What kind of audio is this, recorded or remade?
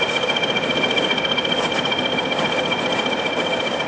recorded